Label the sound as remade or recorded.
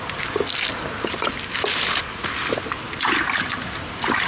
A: recorded